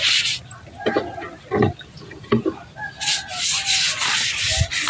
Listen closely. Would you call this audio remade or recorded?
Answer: recorded